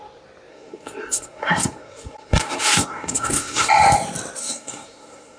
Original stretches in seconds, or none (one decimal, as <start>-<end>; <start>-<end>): 0.0-0.5; 3.7-4.4